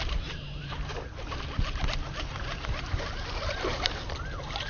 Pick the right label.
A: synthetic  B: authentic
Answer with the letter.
A